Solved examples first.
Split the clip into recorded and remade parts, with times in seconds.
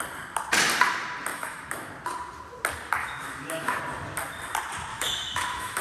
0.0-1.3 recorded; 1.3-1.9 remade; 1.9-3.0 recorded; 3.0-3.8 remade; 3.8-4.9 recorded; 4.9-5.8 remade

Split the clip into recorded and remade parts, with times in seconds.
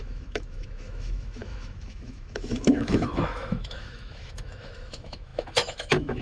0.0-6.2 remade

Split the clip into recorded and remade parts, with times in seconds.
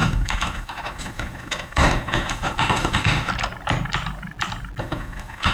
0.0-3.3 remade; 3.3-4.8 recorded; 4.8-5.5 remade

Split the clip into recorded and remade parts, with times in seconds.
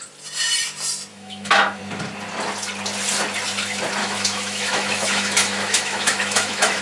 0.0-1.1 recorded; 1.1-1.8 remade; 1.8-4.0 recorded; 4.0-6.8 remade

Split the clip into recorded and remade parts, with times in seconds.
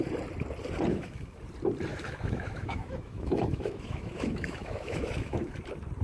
0.0-0.9 recorded; 0.9-1.4 remade; 1.4-1.9 recorded; 1.9-5.5 remade; 5.5-6.0 recorded